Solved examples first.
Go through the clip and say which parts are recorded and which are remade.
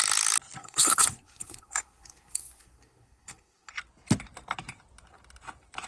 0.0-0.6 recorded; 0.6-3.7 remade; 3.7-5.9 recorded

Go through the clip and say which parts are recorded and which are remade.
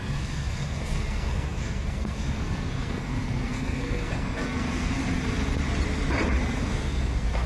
0.0-5.0 remade; 5.0-6.6 recorded; 6.6-7.5 remade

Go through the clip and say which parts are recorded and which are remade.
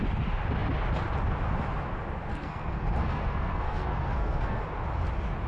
0.0-2.3 recorded; 2.3-4.6 remade; 4.6-5.5 recorded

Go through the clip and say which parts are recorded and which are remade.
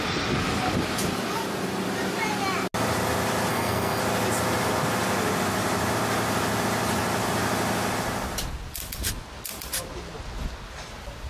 0.0-3.5 recorded; 3.5-4.0 remade; 4.0-11.3 recorded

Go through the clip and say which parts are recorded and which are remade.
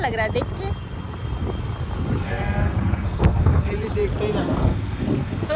0.0-2.2 recorded; 2.2-3.7 remade; 3.7-4.4 recorded; 4.4-5.6 remade